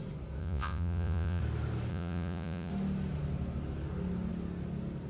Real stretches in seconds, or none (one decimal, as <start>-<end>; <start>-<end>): 0.0-0.4; 1.4-1.9; 2.7-5.1